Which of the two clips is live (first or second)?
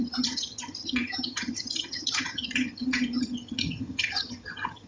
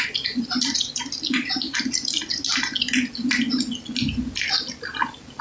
second